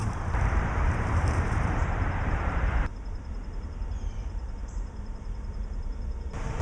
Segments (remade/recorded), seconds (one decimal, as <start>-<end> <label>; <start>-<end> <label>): 0.0-6.6 remade